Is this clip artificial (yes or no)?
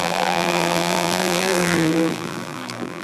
yes